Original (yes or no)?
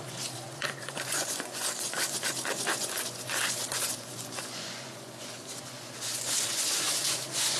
no